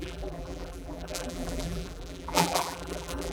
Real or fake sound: fake